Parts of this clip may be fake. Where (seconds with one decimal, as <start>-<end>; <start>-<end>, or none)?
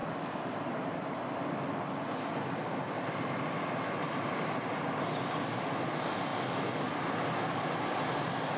0.0-1.2